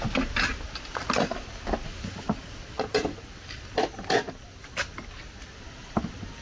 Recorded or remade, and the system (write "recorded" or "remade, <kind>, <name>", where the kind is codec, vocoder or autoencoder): recorded